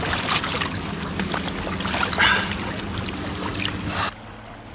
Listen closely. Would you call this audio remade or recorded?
recorded